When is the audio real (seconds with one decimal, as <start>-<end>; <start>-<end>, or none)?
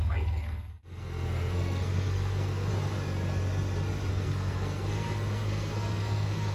2.7-4.1